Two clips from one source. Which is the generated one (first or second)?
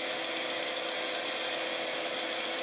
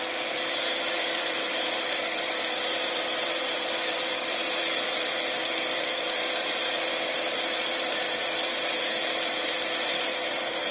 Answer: second